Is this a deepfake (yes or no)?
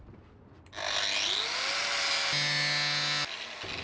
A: no